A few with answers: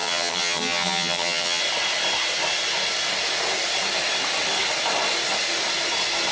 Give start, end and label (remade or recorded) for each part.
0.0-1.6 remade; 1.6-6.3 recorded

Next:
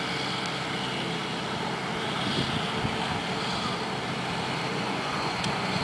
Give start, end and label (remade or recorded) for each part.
0.0-4.7 recorded; 4.7-5.8 remade

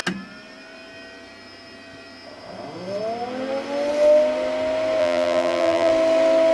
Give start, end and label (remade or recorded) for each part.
0.0-5.0 recorded; 5.0-5.9 remade; 5.9-6.5 recorded

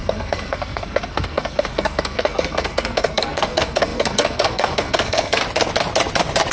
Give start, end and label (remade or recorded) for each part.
0.0-5.4 remade; 5.4-6.5 recorded

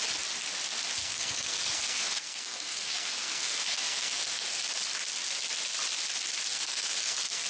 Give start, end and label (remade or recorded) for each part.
0.0-1.0 recorded; 1.0-4.6 remade; 4.6-6.5 recorded; 6.5-7.5 remade

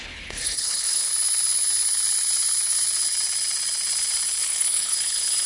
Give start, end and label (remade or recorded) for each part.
0.0-1.1 remade; 1.1-4.4 recorded; 4.4-5.5 remade